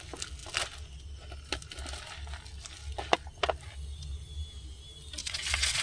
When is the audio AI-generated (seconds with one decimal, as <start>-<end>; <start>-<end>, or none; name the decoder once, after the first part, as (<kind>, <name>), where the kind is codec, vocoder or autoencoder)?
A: 5.2-5.8 (vocoder, WaveNeXt)